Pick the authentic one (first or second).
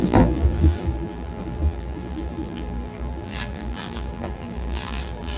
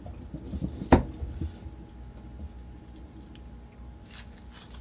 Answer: second